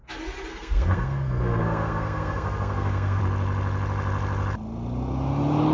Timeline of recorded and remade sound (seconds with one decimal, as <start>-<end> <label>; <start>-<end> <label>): 0.0-0.5 recorded; 0.5-3.2 remade; 3.2-5.7 recorded